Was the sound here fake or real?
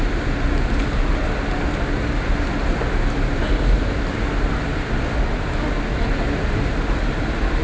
real